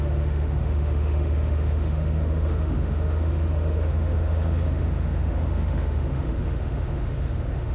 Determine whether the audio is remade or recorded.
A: remade